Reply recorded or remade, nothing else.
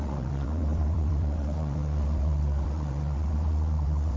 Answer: remade